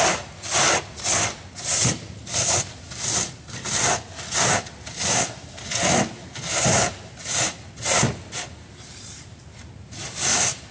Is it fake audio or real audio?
real